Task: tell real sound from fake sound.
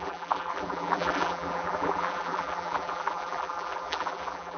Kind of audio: fake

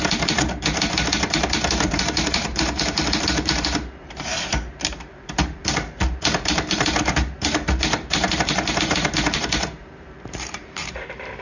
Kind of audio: fake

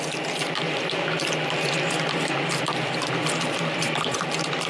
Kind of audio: fake